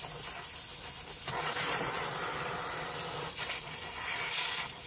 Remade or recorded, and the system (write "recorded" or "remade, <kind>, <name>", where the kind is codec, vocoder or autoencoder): recorded